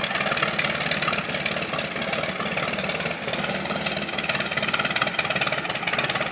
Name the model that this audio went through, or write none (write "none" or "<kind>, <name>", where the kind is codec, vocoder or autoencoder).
none